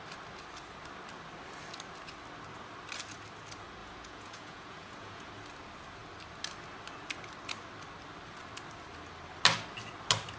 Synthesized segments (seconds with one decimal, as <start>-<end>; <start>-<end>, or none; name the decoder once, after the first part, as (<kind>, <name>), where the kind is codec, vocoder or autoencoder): 3.8-5.3 (vocoder, Vocos)